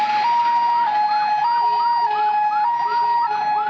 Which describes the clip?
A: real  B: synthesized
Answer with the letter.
A